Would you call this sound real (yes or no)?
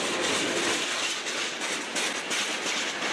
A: yes